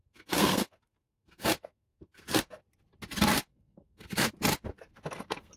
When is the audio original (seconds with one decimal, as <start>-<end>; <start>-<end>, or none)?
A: 2.6-3.5; 4.3-4.7